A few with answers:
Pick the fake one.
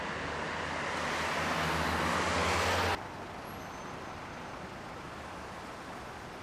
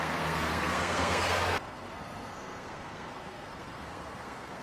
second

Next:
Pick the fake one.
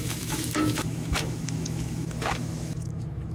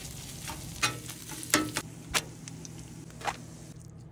first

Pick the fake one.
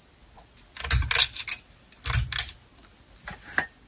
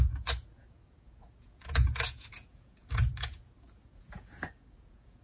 second